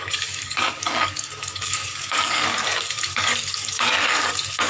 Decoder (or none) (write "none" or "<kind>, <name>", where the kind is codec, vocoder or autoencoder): codec, DAC